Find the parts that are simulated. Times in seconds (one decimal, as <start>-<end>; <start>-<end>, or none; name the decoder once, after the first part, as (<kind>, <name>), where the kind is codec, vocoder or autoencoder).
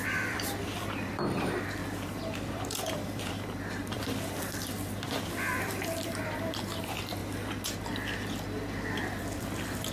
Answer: 0.0-7.2 (vocoder, BigVGAN v2); 9.2-9.9